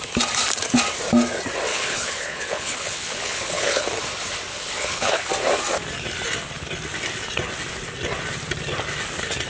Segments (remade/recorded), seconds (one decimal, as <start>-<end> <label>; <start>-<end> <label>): 0.0-1.7 recorded; 1.7-3.9 remade; 3.9-4.5 recorded; 4.5-5.3 remade; 5.3-9.5 recorded